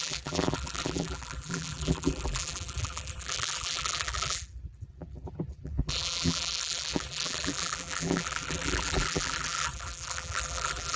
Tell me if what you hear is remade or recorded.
remade